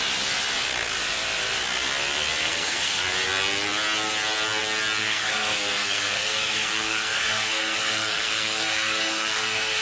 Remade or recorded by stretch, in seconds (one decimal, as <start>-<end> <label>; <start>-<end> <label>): 0.0-2.4 recorded; 2.4-3.0 remade; 3.0-5.0 recorded; 5.0-9.8 remade